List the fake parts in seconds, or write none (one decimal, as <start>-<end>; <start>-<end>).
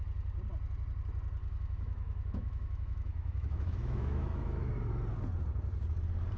1.4-4.7